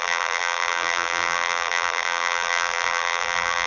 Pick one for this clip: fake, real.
fake